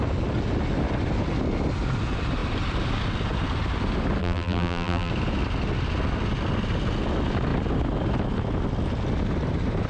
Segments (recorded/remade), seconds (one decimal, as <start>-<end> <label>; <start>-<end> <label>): 0.0-4.2 recorded; 4.2-5.1 remade; 5.1-9.9 recorded

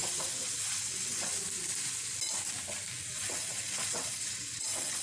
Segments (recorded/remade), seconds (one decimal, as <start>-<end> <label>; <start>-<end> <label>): 0.0-1.3 remade; 1.3-3.1 recorded; 3.1-5.0 remade

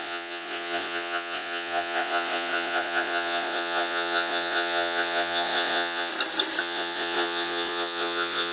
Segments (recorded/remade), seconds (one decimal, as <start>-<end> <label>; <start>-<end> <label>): 0.0-6.1 remade; 6.1-6.6 recorded; 6.6-8.5 remade

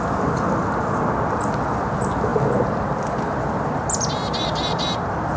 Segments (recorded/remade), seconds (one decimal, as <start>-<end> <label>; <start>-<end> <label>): 0.0-5.4 recorded

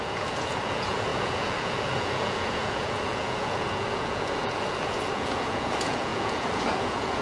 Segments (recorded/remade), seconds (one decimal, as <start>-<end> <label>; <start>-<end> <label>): 0.0-7.2 remade

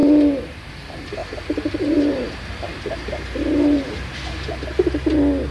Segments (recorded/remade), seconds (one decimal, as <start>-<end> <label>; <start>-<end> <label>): 0.0-0.7 remade; 0.7-1.2 recorded; 1.2-4.5 remade; 4.5-5.5 recorded

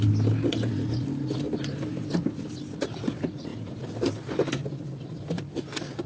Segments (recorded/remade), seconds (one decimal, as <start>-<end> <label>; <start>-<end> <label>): 0.0-6.1 recorded